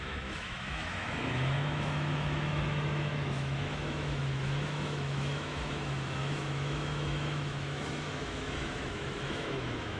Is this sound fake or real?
fake